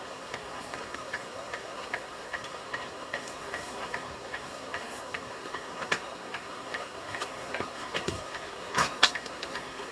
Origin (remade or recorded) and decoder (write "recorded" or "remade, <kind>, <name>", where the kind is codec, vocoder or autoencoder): remade, codec, SNAC